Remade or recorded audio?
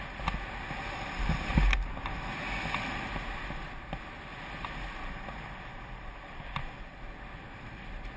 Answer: recorded